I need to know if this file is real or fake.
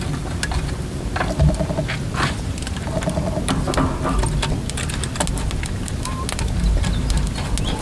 real